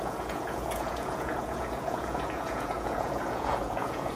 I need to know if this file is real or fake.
fake